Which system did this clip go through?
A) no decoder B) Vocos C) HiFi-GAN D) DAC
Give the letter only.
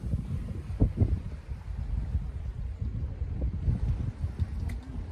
A